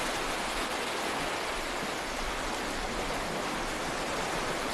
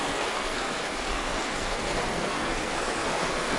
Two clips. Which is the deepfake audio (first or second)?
second